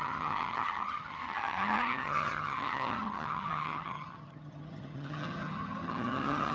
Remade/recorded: remade